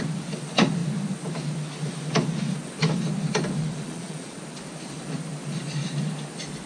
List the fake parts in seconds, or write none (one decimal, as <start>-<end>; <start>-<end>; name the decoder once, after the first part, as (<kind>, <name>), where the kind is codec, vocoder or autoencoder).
3.6-4.4 (vocoder, Vocos)